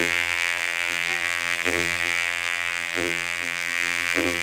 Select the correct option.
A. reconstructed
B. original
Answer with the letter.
A